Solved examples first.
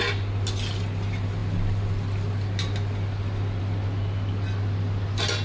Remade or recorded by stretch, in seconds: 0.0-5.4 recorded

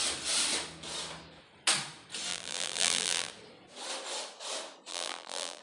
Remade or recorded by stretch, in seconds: 0.0-2.3 recorded; 2.3-3.3 remade; 3.3-4.9 recorded; 4.9-5.6 remade

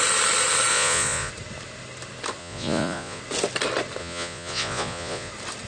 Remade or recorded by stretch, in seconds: 0.0-0.7 recorded; 0.7-1.3 remade; 1.3-2.4 recorded; 2.4-3.2 remade; 3.2-4.0 recorded; 4.0-5.3 remade; 5.3-5.7 recorded

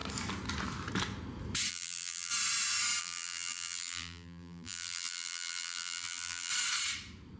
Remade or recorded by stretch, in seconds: 0.0-1.7 recorded; 1.7-2.3 remade; 2.3-3.0 recorded; 3.0-6.5 remade; 6.5-7.4 recorded

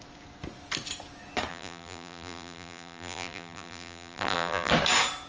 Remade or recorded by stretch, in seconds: 0.0-1.5 recorded; 1.5-4.7 remade; 4.7-5.3 recorded

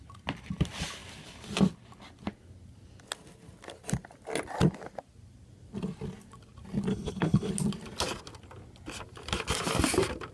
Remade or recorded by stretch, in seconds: 0.0-6.9 recorded; 6.9-7.5 remade; 7.5-10.3 recorded

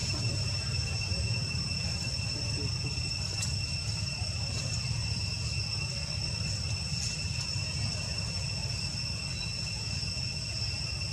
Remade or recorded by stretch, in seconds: 0.0-1.8 remade; 1.8-11.1 recorded